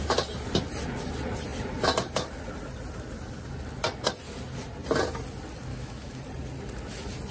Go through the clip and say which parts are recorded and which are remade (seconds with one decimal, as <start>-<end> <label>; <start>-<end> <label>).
0.0-5.7 recorded; 5.7-6.2 remade; 6.2-7.3 recorded